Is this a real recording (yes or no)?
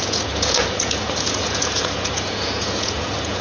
no